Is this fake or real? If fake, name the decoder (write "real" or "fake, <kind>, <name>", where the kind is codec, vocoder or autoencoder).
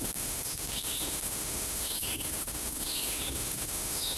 fake, autoencoder, DAC-VAE